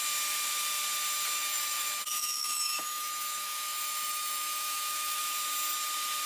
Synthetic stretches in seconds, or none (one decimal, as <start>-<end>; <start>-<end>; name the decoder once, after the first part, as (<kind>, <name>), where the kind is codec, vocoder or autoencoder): 1.4-5.2 (autoencoder, DAC-VAE)